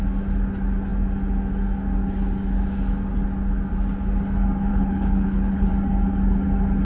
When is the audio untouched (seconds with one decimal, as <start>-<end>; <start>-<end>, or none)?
0.0-4.7; 5.7-6.8